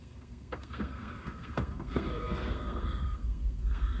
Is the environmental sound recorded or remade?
remade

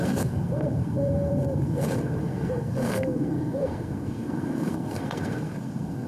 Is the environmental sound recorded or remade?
remade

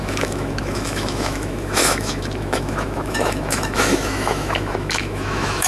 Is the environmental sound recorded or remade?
remade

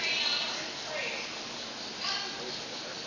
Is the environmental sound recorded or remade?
recorded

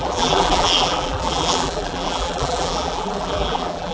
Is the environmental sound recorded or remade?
remade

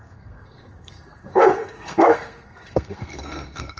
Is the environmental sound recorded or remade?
remade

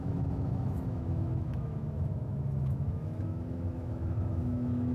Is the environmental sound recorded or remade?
remade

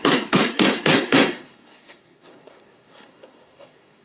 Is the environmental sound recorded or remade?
remade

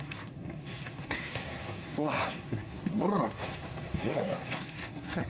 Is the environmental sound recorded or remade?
remade